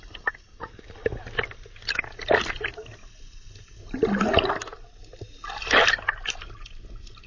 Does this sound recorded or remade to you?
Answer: recorded